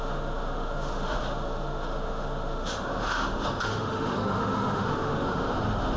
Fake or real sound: fake